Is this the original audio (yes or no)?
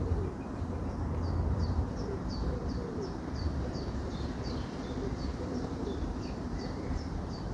no